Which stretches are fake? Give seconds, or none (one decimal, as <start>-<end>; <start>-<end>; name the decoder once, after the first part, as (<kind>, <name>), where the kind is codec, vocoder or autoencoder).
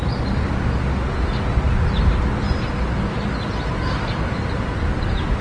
none